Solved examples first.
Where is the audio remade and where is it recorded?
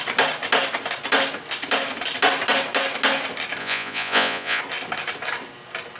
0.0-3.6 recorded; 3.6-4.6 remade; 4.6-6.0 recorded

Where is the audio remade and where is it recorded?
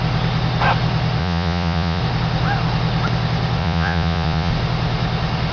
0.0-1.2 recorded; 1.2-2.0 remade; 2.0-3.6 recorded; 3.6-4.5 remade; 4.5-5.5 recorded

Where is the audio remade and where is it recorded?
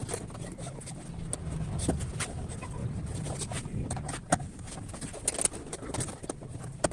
0.0-6.9 recorded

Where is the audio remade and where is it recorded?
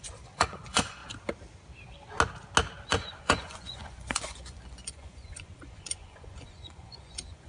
0.0-1.0 remade; 1.0-2.9 recorded; 2.9-7.5 remade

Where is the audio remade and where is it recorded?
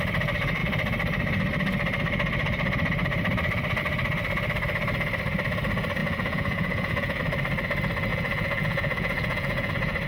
0.0-6.0 recorded; 6.0-7.2 remade; 7.2-8.1 recorded; 8.1-9.7 remade; 9.7-10.1 recorded